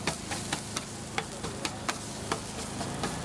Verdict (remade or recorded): recorded